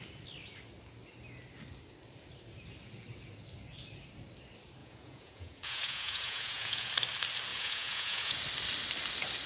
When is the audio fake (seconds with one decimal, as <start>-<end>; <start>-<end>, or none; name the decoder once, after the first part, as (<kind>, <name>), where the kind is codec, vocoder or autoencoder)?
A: 4.8-6.9 (vocoder, Vocos); 7.5-8.4